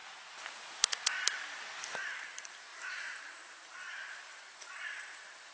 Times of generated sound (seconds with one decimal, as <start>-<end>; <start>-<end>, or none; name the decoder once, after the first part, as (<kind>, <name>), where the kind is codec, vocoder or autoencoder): 2.1-5.5 (vocoder, BigVGAN v2)